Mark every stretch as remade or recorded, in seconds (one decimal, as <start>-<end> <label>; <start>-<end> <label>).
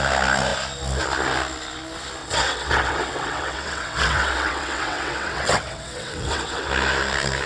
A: 0.0-2.2 recorded; 2.2-6.7 remade; 6.7-7.5 recorded